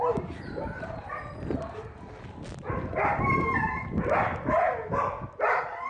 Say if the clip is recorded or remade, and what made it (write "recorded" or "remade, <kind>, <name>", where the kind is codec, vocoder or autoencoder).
recorded